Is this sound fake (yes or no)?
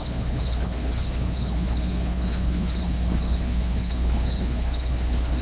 yes